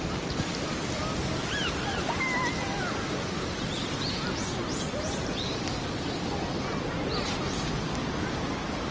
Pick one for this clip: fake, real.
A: real